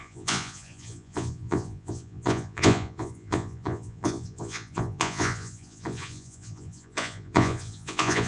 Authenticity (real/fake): fake